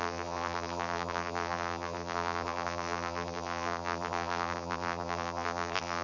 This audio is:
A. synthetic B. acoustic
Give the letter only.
A